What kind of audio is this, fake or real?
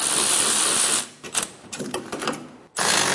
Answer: real